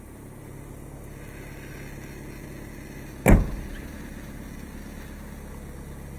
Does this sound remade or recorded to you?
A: recorded